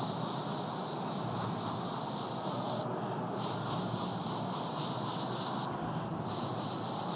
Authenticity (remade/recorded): recorded